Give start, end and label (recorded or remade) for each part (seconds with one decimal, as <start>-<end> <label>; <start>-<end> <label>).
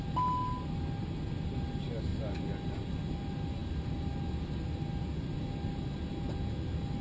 0.0-7.0 recorded